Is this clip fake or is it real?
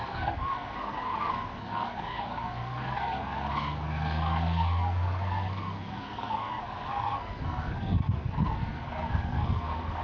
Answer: fake